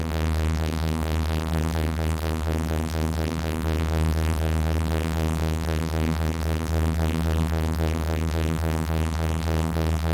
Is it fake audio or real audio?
fake